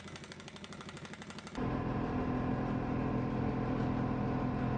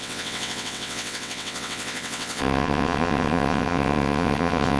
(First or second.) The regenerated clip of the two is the second